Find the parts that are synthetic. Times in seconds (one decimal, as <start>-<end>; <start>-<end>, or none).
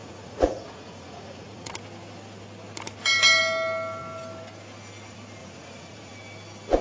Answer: 0.0-1.7; 5.4-6.1